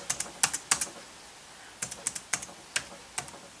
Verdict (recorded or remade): recorded